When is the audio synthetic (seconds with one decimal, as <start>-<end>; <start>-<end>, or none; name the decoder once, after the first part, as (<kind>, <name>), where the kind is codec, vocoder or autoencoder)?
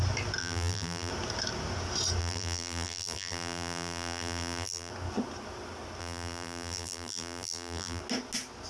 0.4-1.1 (vocoder, BigVGAN v2); 2.2-4.9; 6.0-8.0